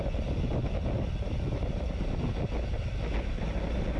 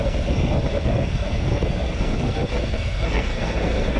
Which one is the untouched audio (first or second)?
first